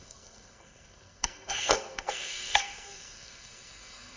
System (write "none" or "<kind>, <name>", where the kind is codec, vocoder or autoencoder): codec, SNAC